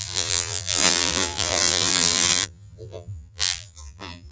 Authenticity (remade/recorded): remade